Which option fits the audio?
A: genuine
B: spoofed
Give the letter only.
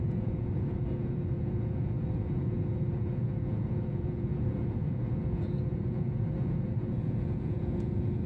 B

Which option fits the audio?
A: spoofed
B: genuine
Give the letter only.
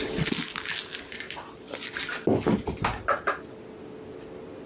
B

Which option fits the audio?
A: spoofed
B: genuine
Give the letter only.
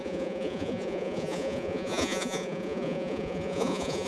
A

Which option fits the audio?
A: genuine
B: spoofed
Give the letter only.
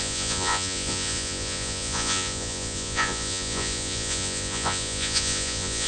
B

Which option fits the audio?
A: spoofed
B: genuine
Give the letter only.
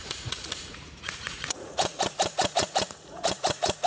A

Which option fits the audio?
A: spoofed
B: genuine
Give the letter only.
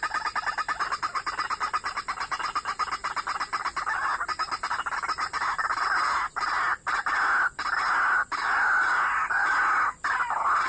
B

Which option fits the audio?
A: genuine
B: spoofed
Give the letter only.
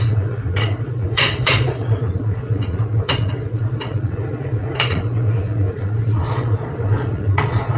B